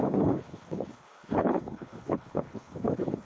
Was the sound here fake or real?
fake